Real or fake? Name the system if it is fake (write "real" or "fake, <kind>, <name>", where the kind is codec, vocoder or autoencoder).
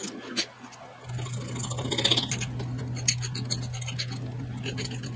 real